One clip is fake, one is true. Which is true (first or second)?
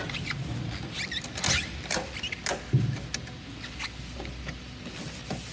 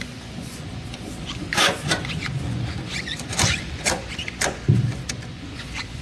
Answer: first